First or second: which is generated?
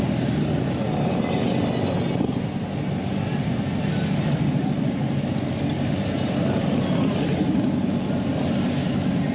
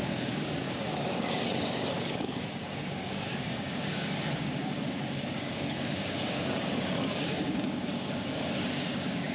second